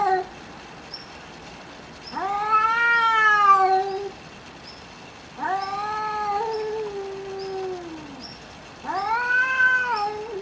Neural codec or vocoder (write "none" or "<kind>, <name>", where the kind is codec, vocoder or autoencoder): none